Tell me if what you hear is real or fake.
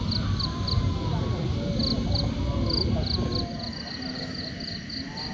real